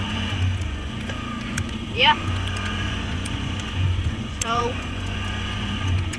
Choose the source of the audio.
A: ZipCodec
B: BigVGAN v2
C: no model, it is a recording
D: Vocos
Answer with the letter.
D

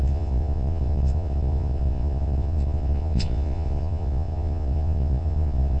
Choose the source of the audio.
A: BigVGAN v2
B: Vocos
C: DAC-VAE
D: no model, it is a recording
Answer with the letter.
B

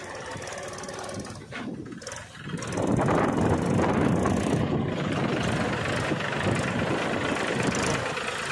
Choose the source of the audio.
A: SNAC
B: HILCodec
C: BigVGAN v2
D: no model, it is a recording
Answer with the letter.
D